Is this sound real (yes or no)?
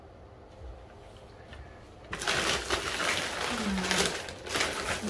yes